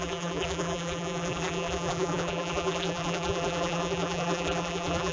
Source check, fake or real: fake